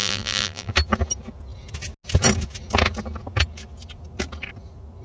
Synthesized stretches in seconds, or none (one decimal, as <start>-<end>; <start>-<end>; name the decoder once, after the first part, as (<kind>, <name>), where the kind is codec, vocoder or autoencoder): 0.0-0.7 (vocoder, BigVGAN v2)